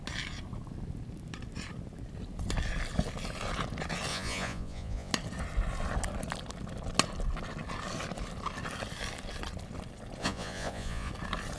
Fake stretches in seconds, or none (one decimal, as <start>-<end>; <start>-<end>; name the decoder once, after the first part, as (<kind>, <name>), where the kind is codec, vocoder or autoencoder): 4.1-5.1 (vocoder, Vocos); 10.2-11.1